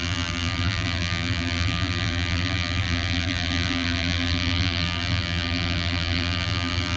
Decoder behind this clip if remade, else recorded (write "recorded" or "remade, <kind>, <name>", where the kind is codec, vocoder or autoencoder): remade, vocoder, BigVGAN v2